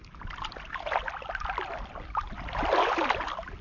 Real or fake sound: real